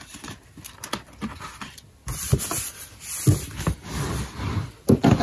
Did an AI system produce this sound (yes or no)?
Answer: no